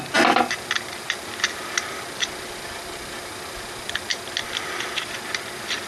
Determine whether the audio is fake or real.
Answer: real